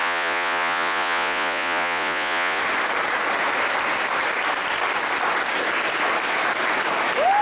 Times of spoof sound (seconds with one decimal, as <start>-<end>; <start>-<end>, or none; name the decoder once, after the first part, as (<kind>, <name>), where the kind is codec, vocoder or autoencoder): 0.0-2.6 (vocoder, Vocos)